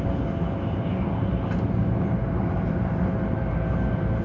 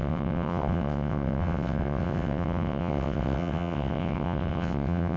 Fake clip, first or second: second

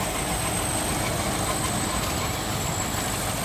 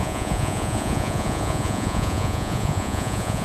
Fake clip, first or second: second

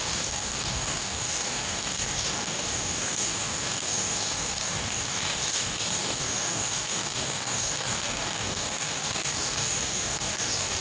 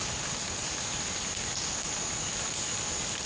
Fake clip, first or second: first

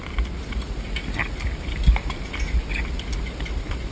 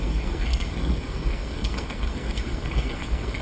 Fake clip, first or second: second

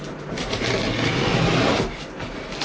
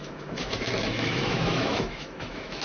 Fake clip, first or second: second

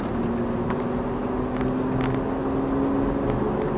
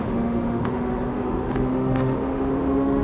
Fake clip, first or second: second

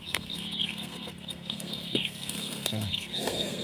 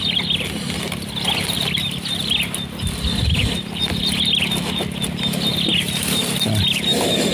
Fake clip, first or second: first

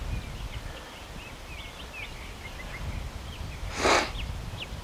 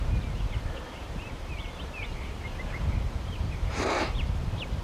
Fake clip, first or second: second